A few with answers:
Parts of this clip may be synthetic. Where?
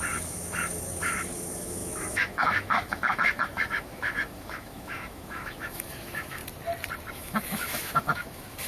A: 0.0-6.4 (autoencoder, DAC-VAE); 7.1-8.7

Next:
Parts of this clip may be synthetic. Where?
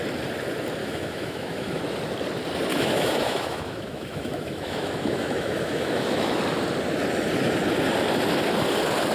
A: 0.8-1.8 (autoencoder, DAC-VAE); 2.7-6.4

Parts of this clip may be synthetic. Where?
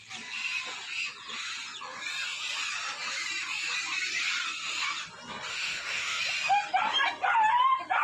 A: 5.5-6.2 (autoencoder, DAC-VAE)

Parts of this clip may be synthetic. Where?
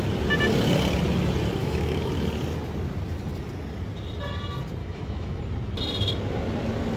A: 1.6-2.1 (autoencoder, DAC-VAE); 4.8-5.4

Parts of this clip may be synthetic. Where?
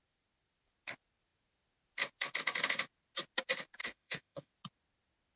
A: 3.8-4.5 (autoencoder, DAC-VAE)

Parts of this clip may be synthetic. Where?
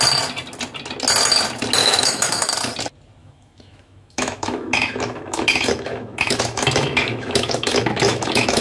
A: 1.8-2.5 (autoencoder, DAC-VAE); 3.2-8.6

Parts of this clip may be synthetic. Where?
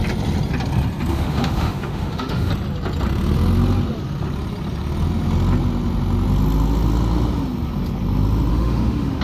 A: 1.1-2.5 (autoencoder, DAC-VAE); 8.5-9.2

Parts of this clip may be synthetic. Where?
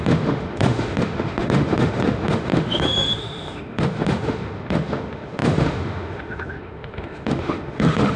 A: 0.0-8.2 (autoencoder, DAC-VAE)